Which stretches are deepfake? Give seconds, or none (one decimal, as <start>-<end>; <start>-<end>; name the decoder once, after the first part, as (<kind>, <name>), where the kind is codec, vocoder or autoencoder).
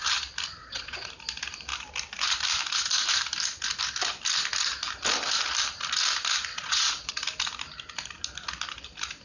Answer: 0.6-1.1 (vocoder, Vocos); 6.5-7.1